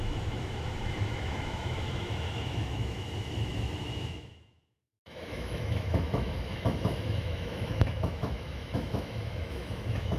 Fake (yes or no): yes